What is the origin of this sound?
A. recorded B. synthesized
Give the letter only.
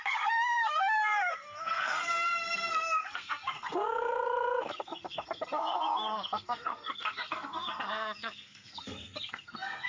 B